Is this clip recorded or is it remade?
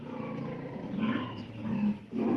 recorded